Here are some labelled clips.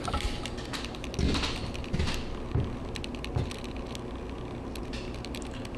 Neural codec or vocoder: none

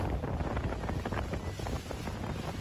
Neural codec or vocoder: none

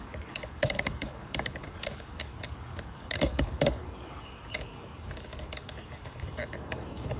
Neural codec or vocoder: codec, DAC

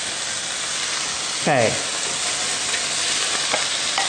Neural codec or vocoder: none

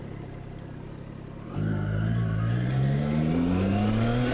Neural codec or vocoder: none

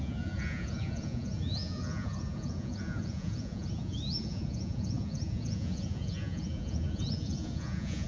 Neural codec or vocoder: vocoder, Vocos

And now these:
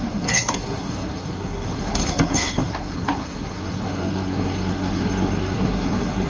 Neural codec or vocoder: codec, SNAC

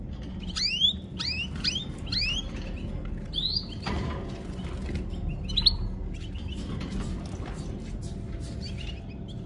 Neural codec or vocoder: none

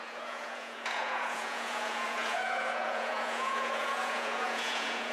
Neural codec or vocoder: vocoder, Vocos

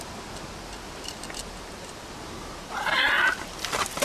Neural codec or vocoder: none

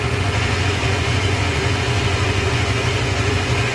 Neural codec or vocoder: vocoder, Vocos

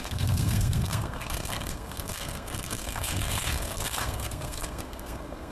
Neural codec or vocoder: codec, SNAC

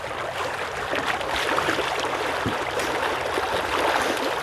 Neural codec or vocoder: none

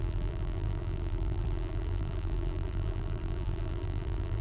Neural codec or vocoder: vocoder, BigVGAN v2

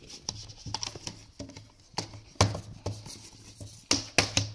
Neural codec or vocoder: none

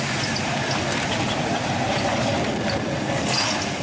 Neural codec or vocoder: none